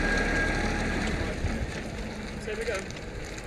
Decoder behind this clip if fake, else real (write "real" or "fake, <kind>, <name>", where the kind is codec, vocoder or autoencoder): real